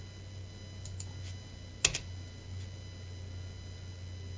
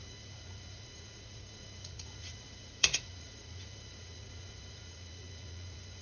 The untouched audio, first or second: first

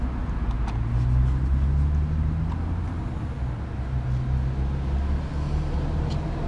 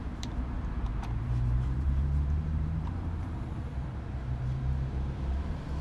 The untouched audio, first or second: first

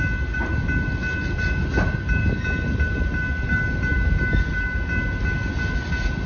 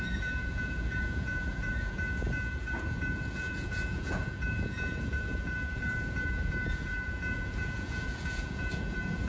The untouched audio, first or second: first